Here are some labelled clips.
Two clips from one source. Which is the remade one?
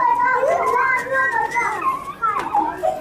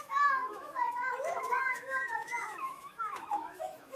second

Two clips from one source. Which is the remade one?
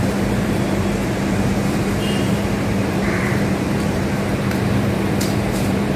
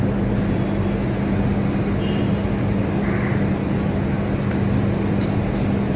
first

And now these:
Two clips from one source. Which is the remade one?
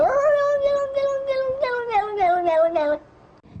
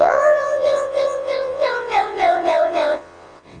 second